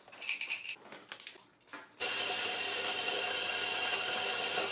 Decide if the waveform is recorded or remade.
recorded